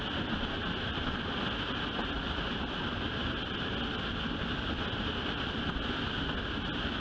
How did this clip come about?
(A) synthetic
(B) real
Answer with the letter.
B